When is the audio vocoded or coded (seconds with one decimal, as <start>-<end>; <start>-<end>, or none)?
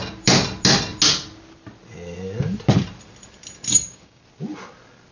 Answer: 3.7-4.2